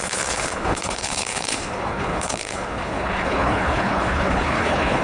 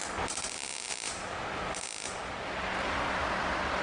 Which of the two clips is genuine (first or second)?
second